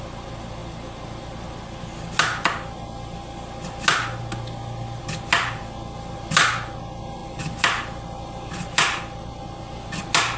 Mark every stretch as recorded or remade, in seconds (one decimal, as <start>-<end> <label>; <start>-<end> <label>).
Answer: 0.0-10.4 recorded